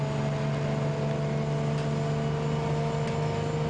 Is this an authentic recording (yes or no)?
yes